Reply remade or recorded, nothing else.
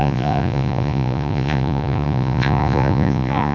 remade